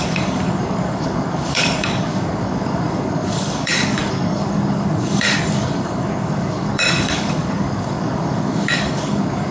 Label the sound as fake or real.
fake